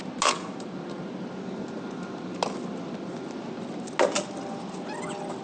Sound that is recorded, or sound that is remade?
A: recorded